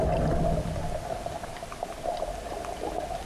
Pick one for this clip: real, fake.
real